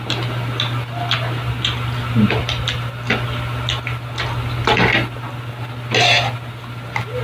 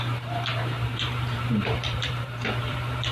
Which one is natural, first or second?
first